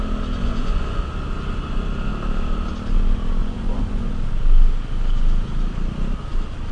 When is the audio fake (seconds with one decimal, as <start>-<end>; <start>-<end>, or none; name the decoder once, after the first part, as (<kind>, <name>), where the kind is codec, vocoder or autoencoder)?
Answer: 0.4-1.0 (vocoder, Vocos); 3.4-4.1